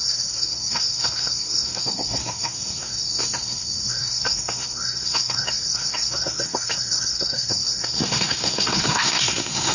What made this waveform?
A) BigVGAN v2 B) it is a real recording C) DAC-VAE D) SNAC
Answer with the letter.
D